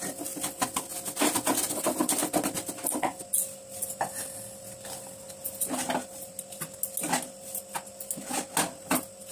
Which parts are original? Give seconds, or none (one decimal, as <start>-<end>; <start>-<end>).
0.0-9.3